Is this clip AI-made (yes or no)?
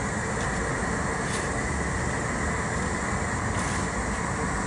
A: no